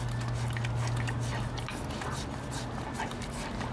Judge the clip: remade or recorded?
recorded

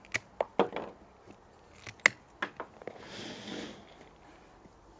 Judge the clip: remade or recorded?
recorded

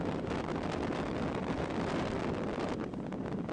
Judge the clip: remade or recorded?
remade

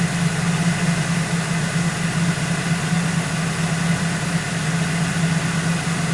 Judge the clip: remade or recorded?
recorded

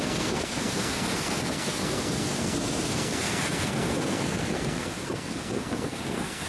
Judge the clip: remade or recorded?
remade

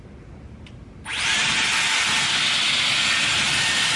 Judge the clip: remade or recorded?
recorded